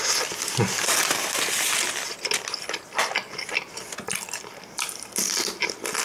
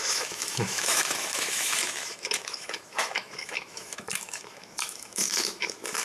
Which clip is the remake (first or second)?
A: second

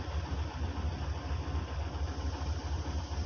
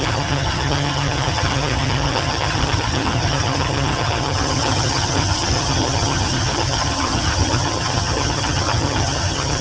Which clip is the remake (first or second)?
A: second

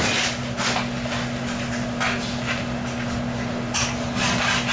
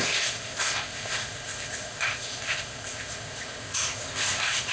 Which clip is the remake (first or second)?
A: second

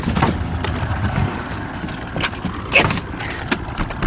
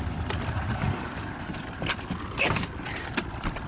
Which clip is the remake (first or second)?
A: second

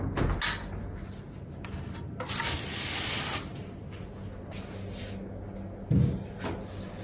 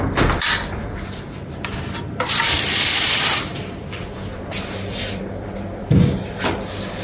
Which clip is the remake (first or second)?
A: second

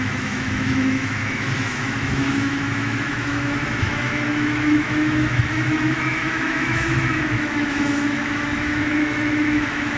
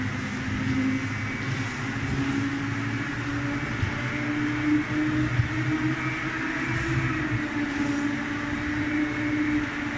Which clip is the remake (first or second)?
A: first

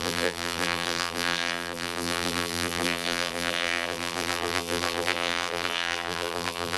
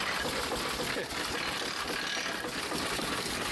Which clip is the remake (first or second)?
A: first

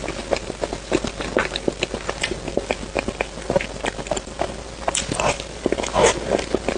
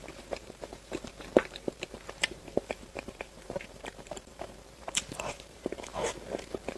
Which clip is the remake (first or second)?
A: second